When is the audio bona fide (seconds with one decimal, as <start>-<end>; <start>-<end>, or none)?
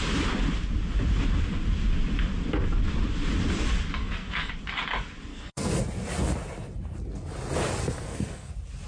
0.0-4.0; 4.5-5.3; 5.8-7.8; 8.5-8.9